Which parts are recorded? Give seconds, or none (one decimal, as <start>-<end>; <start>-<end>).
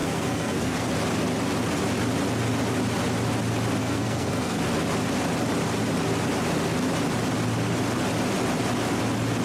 0.9-3.8; 4.6-9.4